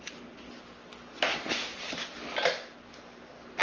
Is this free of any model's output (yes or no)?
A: yes